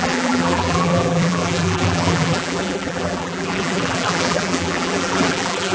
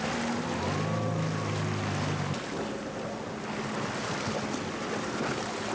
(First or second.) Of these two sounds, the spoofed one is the first